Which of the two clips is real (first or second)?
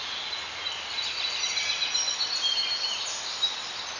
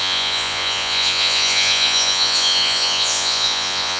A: first